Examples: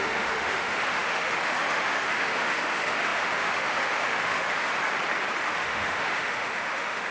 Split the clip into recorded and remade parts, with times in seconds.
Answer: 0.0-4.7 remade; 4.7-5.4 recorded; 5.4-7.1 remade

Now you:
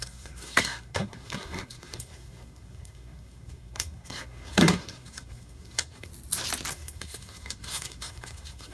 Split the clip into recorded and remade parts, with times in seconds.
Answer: 0.0-6.1 remade; 6.1-6.7 recorded; 6.7-8.7 remade

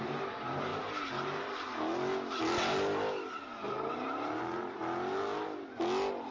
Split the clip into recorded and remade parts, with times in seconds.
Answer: 0.0-6.3 recorded

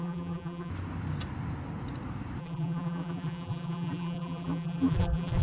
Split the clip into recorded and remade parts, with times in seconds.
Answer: 0.0-0.7 remade; 0.7-2.4 recorded; 2.4-5.4 remade